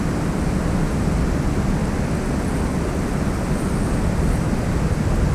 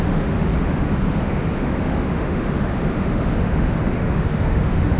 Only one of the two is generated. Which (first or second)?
second